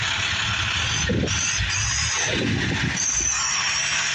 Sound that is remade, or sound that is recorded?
recorded